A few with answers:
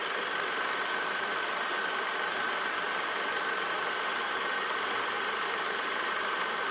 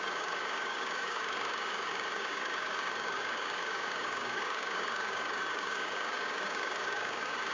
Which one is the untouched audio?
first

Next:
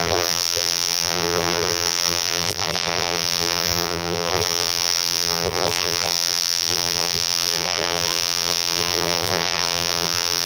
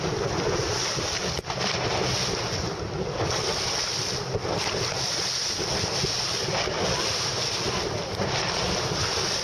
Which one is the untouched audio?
second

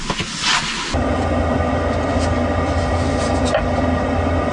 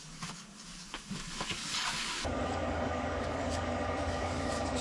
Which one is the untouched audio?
first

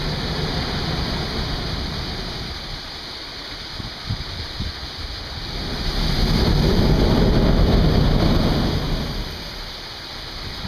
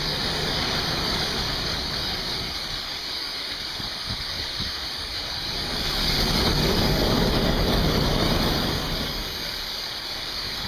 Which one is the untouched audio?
first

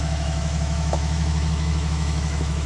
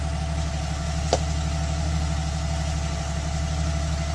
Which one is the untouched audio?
second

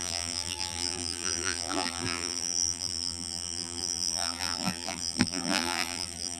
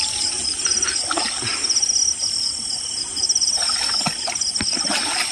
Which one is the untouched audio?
second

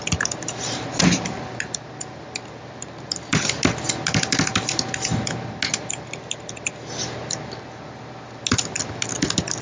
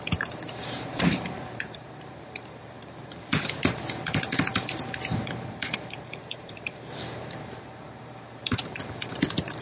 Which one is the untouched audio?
first